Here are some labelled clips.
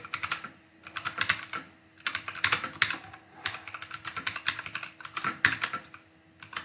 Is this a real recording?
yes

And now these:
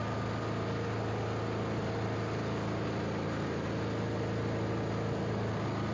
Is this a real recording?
yes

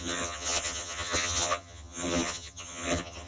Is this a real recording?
no